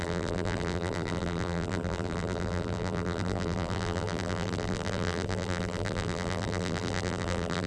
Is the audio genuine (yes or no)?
no